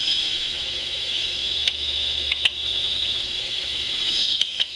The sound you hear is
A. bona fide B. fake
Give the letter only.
B